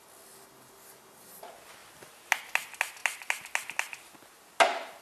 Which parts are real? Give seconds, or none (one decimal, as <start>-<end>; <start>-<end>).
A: 0.0-5.0